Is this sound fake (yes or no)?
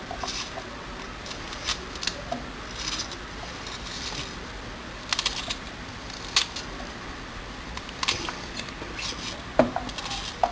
no